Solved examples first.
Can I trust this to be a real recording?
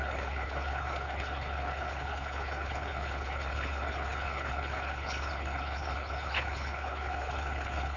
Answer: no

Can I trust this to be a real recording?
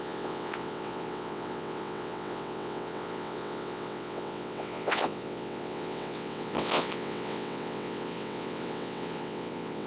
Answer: no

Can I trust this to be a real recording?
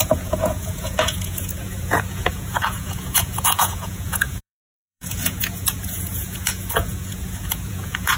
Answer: no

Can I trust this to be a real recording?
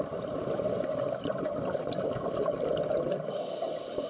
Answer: yes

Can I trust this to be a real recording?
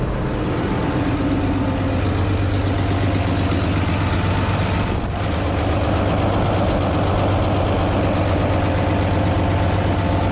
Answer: yes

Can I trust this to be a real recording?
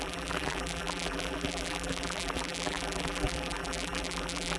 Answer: no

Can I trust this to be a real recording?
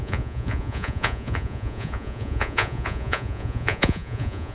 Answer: no